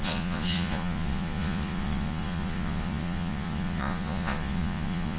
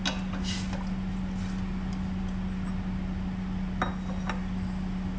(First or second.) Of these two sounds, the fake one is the first